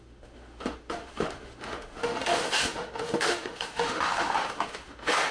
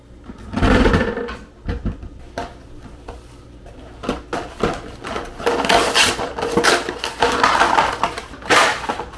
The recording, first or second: second